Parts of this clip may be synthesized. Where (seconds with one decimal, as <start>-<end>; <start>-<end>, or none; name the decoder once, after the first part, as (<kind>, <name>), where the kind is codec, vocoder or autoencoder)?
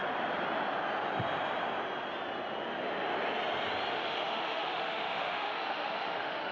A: 3.9-6.5 (autoencoder, DAC-VAE)